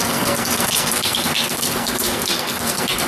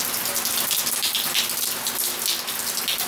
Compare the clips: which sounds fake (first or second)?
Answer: first